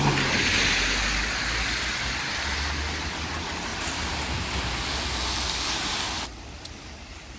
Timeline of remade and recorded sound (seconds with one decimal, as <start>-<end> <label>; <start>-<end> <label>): 0.0-7.4 recorded